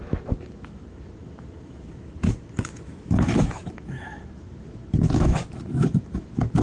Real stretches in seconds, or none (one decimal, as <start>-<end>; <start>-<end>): none